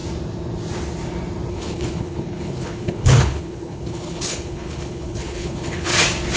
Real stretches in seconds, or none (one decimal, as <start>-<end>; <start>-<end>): 0.0-1.5; 5.9-6.4